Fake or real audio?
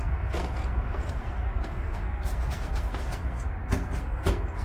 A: fake